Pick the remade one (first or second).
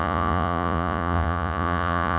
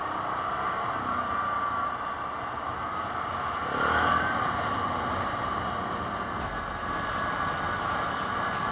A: first